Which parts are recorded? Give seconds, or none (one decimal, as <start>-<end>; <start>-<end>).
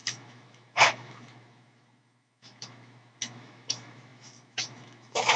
none